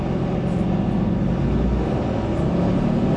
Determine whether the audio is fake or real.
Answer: real